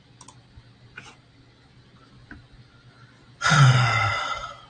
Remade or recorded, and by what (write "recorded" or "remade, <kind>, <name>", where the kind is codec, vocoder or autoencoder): recorded